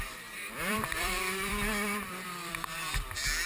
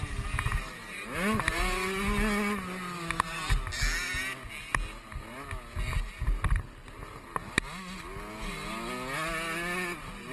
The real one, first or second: second